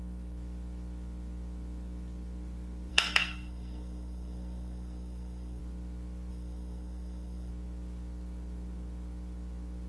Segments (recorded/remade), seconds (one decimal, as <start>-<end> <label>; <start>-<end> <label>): 0.0-2.9 recorded; 2.9-5.6 remade; 5.6-6.3 recorded; 6.3-7.5 remade; 7.5-9.9 recorded